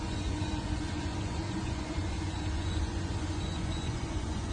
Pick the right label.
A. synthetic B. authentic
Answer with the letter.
A